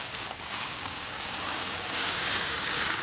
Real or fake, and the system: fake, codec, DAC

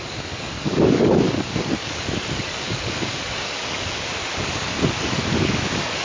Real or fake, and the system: fake, codec, DAC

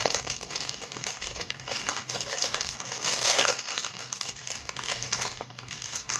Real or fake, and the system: fake, codec, DAC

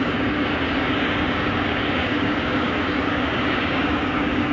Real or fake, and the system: fake, codec, DAC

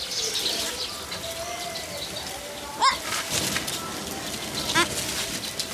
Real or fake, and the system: real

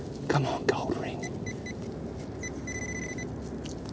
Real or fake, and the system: real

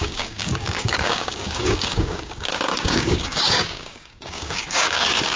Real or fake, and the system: fake, codec, DAC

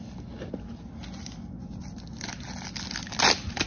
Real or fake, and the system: real